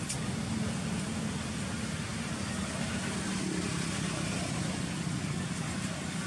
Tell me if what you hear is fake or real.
real